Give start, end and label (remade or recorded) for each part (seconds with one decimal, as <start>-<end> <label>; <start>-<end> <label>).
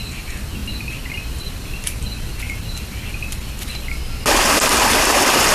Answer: 0.0-5.5 recorded